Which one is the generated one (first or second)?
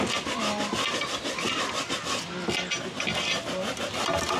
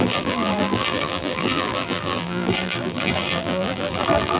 second